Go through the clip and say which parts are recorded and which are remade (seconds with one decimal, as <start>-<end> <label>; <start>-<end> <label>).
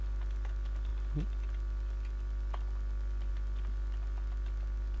0.0-5.0 recorded